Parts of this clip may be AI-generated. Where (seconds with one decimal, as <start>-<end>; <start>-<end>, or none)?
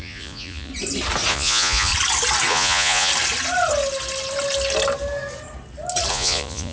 0.0-0.7; 1.3-1.9; 2.5-3.1; 6.1-6.7